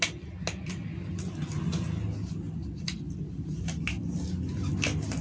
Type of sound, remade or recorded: recorded